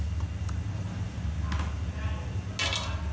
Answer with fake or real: real